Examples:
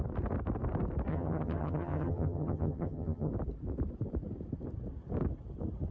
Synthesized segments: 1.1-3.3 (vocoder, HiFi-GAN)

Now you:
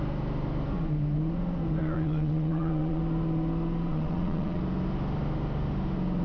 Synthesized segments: 1.8-3.0 (vocoder, WaveNeXt); 3.9-4.6